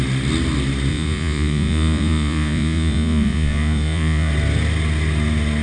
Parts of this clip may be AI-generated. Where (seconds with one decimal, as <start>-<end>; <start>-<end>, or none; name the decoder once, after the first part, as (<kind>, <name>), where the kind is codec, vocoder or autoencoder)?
0.9-4.3 (vocoder, Vocos)